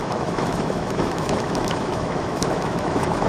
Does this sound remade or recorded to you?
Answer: remade